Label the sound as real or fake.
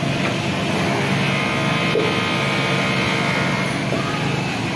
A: real